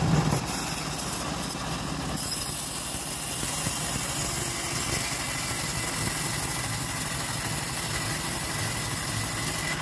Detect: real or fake real